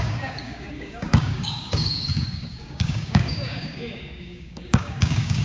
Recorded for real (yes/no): no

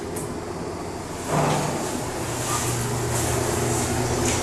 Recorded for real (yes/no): yes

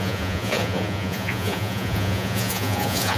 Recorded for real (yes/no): no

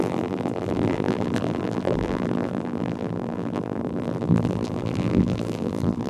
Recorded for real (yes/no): no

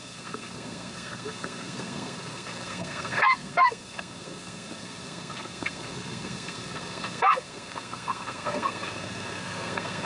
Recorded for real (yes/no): no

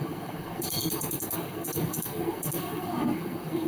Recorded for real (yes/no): no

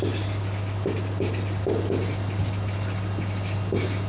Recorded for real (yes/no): yes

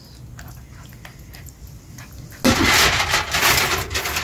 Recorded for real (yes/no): yes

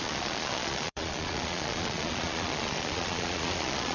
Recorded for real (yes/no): no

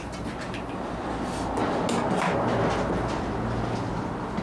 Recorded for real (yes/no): yes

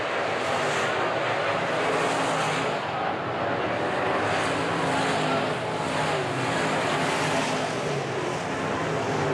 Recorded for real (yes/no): yes